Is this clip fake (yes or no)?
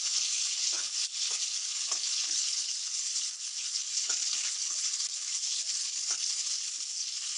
yes